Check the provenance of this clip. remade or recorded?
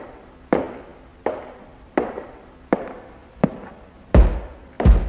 recorded